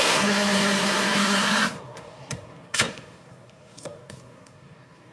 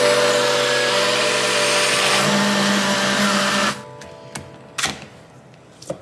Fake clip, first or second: first